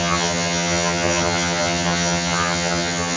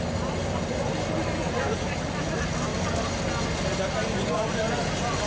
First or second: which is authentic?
second